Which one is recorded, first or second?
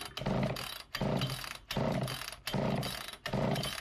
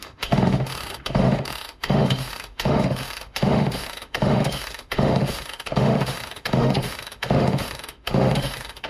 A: first